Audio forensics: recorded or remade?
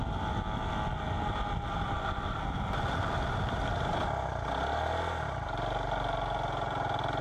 recorded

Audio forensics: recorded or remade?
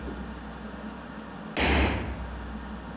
recorded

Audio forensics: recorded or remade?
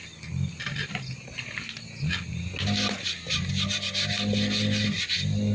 recorded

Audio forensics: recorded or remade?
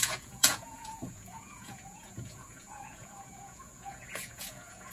remade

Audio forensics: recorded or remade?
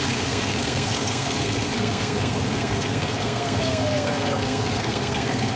remade